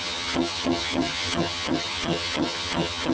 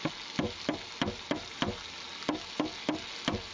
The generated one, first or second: first